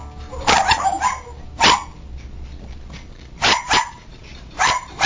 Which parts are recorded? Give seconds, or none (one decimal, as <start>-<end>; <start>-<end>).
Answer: 0.0-3.1